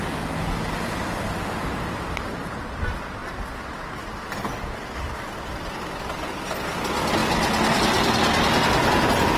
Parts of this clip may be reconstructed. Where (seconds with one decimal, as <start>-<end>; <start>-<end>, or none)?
none